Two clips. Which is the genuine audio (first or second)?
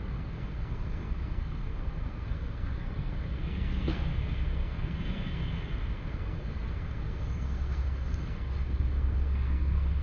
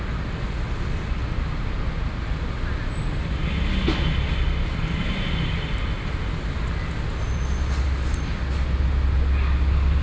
second